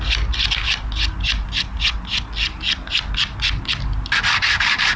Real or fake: real